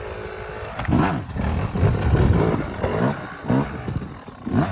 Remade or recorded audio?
recorded